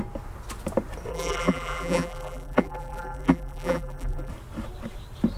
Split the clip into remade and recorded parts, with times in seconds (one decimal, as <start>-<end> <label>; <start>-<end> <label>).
0.0-1.1 recorded; 1.1-4.3 remade; 4.3-5.4 recorded